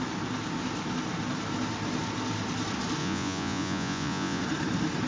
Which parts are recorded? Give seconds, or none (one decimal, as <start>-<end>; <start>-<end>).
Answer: 0.0-3.0; 4.4-5.1